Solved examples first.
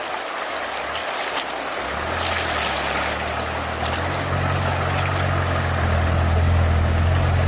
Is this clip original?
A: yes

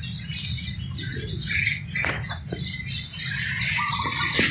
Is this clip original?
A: yes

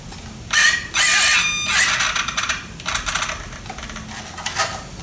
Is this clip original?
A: yes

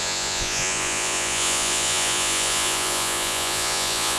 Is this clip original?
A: no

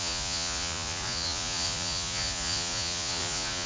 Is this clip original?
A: no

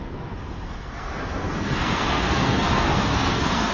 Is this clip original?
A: no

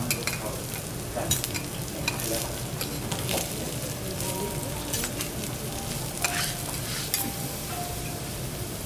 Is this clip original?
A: yes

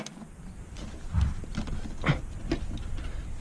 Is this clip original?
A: yes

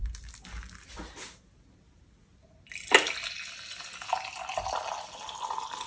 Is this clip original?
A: yes